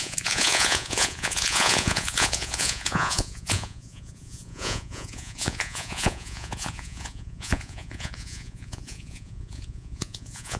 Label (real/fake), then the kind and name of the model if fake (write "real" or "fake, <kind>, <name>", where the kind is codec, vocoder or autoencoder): fake, vocoder, Vocos